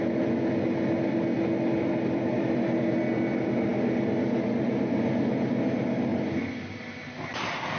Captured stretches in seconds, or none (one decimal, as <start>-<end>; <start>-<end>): 0.0-7.8